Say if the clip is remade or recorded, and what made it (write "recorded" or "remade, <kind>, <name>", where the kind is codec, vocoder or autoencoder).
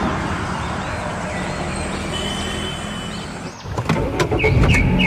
recorded